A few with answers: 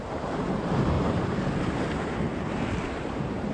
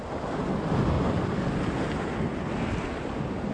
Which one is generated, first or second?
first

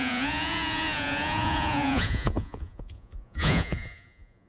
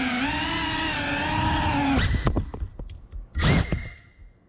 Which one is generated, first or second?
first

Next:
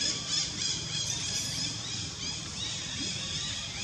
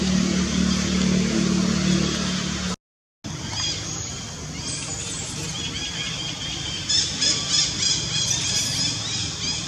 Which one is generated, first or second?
first